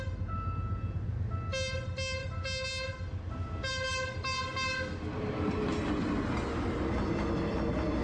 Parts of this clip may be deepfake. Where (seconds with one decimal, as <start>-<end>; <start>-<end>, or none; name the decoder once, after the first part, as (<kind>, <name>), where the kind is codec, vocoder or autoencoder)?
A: none